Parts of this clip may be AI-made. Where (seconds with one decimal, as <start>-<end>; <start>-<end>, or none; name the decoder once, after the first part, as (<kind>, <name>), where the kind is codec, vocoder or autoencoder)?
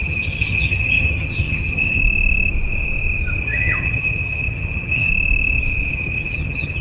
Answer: 0.0-2.0 (vocoder, HiFi-GAN); 3.4-5.1; 5.9-6.8